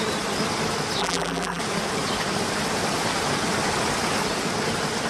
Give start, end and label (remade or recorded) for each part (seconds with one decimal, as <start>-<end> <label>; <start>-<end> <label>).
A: 0.0-1.0 recorded; 1.0-1.6 remade; 1.6-5.1 recorded